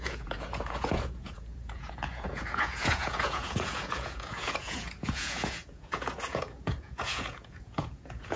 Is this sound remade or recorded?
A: remade